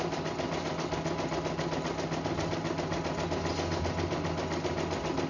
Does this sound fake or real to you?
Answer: real